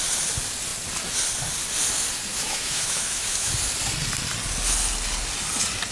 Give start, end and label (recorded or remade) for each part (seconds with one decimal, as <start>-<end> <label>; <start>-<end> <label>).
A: 0.0-2.3 recorded; 2.3-3.5 remade; 3.5-5.9 recorded